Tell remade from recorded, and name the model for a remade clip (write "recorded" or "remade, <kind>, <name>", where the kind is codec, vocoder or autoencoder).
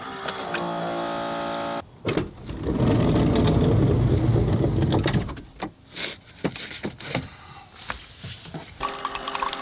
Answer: recorded